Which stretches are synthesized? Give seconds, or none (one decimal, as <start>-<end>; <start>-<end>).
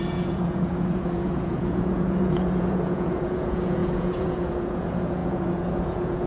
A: 0.0-6.3